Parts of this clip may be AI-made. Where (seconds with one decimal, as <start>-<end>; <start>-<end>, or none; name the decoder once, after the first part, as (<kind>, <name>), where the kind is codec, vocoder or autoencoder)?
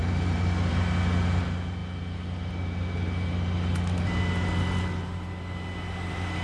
none